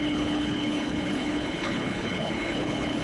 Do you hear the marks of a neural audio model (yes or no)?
yes